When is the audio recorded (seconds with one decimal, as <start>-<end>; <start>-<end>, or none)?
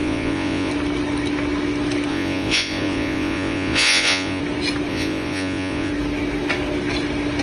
0.7-2.1; 4.4-4.9; 5.9-7.4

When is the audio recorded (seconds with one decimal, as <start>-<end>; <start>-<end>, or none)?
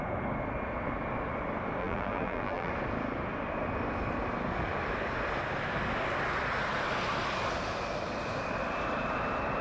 0.0-1.8; 2.7-9.6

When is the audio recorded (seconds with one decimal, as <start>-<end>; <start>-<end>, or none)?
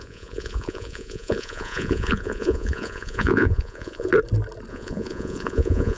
4.1-4.7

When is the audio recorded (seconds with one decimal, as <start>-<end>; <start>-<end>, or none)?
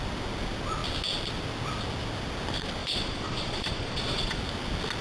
0.0-2.8; 4.4-5.0